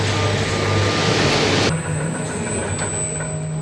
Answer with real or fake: real